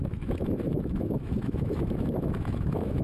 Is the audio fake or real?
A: fake